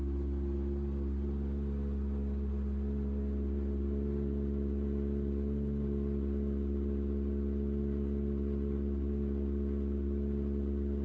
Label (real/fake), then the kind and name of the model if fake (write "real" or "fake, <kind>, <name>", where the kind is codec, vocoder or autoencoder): real